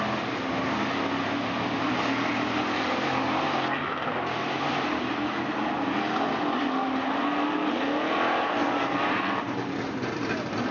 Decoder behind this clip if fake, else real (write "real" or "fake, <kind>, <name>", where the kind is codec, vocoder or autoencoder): real